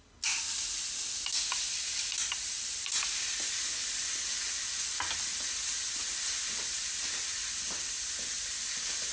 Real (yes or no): yes